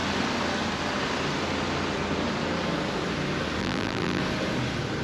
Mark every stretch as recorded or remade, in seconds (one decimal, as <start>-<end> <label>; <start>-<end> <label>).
0.0-3.6 recorded; 3.6-4.2 remade; 4.2-5.0 recorded